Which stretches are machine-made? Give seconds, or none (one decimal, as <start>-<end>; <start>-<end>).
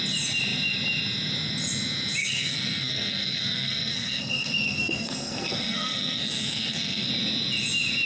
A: 2.2-7.1